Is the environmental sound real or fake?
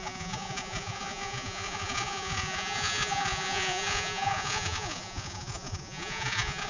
fake